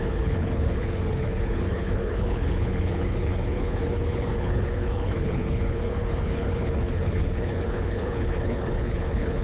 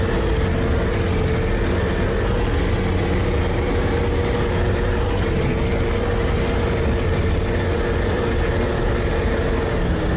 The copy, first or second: first